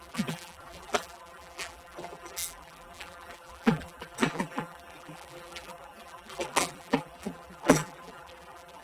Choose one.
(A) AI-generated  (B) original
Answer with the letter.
A